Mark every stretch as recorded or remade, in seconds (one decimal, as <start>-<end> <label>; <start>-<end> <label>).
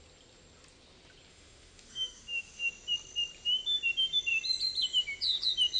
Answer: 0.0-1.3 recorded; 1.3-2.7 remade; 2.7-5.8 recorded